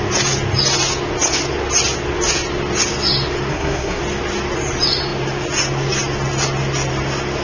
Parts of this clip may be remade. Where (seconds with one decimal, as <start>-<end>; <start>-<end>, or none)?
3.5-4.0